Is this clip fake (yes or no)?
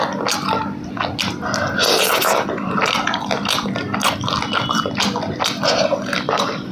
no